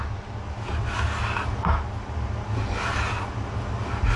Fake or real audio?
real